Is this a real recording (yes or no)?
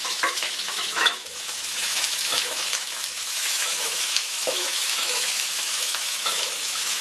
no